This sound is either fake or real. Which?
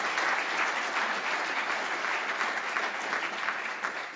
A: real